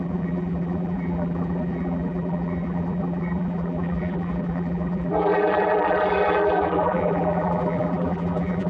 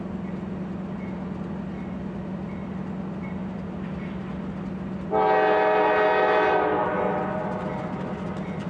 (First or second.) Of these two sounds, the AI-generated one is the first